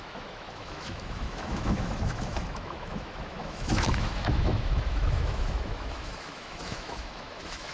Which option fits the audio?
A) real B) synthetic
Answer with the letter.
B